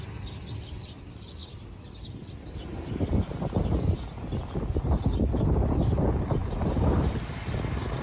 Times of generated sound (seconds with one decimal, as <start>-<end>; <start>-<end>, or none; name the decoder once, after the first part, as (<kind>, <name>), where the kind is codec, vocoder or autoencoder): 6.4-7.3 (vocoder, BigVGAN v2)